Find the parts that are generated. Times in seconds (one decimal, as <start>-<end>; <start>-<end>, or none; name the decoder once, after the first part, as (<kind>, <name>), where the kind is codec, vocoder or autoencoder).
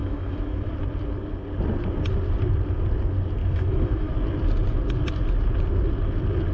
0.0-0.7 (autoencoder, DAC-VAE); 3.4-4.1